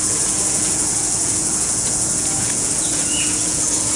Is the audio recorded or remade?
remade